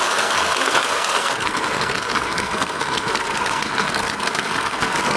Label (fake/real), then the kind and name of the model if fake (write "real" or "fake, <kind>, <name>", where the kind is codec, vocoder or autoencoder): fake, codec, SNAC